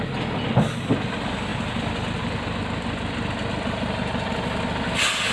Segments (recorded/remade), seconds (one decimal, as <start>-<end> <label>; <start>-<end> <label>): 0.0-5.3 recorded